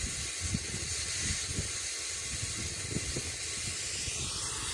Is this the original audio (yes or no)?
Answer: yes